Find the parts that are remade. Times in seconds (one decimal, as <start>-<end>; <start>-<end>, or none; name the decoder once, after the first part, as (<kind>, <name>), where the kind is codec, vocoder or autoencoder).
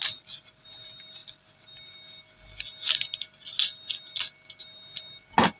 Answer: none